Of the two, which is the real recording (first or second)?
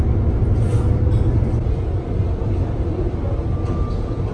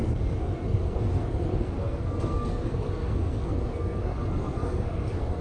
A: first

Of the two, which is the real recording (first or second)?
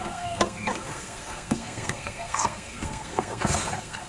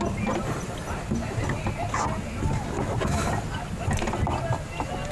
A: second